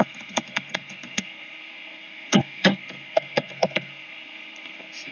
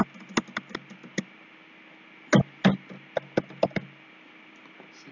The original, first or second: second